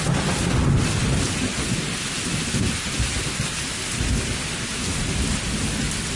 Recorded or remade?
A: recorded